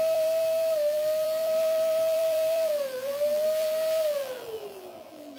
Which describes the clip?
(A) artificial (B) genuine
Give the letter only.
A